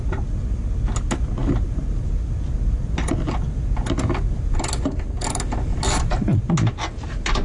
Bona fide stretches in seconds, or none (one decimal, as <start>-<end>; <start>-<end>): 0.0-1.4; 2.1-5.7; 6.5-7.4